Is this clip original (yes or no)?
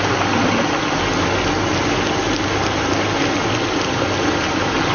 yes